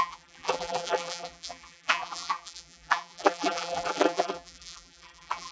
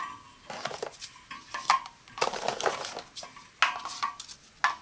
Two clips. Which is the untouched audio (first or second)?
second